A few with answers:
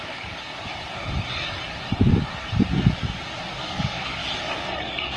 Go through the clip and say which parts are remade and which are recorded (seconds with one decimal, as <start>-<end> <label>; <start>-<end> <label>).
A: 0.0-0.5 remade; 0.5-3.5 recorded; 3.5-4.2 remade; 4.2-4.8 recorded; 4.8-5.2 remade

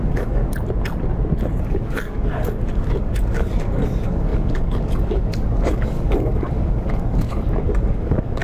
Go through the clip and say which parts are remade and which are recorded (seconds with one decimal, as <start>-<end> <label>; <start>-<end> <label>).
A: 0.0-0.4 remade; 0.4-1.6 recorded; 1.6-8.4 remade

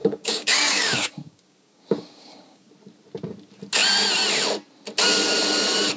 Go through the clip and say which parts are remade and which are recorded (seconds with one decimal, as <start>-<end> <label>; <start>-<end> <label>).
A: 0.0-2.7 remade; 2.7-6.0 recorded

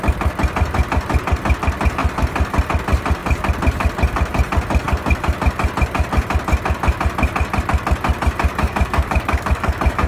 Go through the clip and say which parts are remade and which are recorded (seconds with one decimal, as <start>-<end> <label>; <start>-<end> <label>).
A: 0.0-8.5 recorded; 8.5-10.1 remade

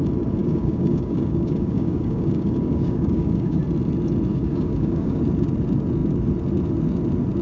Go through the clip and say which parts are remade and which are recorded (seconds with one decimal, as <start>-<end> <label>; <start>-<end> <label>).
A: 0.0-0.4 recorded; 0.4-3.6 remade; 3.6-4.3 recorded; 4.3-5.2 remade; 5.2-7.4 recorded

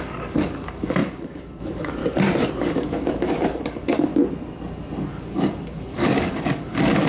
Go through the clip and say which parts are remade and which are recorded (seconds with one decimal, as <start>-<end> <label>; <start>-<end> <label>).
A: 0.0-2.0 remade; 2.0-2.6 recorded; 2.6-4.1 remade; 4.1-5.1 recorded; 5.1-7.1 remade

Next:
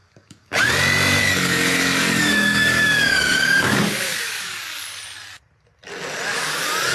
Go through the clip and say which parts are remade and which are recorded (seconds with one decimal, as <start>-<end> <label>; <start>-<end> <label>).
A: 0.0-0.6 remade; 0.6-1.2 recorded; 1.2-4.8 remade; 4.8-6.3 recorded; 6.3-6.9 remade

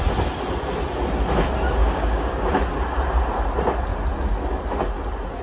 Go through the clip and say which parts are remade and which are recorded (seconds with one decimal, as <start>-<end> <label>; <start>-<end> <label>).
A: 0.0-1.8 recorded; 1.8-2.5 remade; 2.5-5.4 recorded